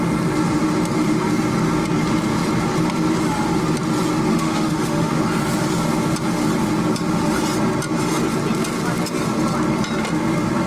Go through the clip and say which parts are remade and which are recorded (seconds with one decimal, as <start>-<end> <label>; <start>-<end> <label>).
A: 0.0-4.3 recorded; 4.3-5.2 remade; 5.2-10.7 recorded